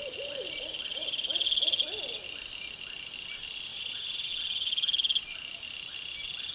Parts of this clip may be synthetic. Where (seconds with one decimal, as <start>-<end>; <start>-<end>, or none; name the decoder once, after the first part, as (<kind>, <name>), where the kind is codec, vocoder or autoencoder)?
3.7-4.3 (vocoder, Vocos)